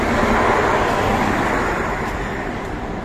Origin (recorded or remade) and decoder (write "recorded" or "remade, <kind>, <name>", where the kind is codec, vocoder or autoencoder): recorded